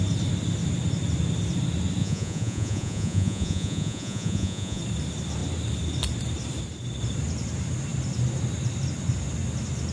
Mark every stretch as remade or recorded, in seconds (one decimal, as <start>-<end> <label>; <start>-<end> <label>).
0.0-2.0 recorded; 2.0-4.8 remade; 4.8-9.9 recorded